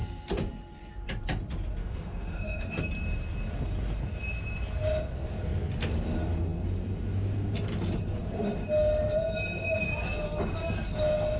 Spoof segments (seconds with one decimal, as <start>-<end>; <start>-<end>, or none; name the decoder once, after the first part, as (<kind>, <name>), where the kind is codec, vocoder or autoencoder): 1.8-2.8 (autoencoder, DAC-VAE)